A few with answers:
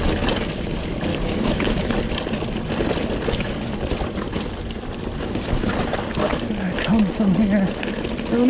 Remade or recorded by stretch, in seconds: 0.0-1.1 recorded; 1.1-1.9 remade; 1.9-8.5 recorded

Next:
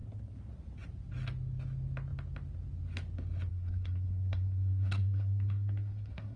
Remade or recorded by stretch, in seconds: 0.0-3.5 recorded; 3.5-6.4 remade

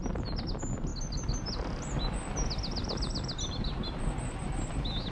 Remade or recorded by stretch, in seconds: 0.0-5.1 recorded

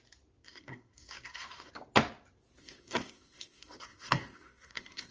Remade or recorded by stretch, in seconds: 0.0-0.4 recorded; 0.4-1.7 remade; 1.7-2.6 recorded; 2.6-5.1 remade

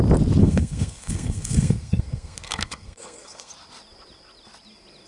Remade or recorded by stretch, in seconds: 0.0-0.4 recorded; 0.4-3.5 remade; 3.5-5.1 recorded